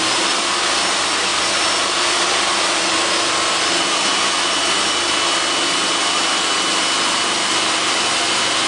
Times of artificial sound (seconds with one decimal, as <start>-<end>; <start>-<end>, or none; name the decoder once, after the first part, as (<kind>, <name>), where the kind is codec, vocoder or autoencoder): none